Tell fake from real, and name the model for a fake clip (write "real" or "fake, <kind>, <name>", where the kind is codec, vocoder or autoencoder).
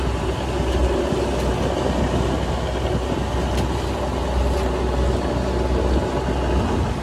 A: real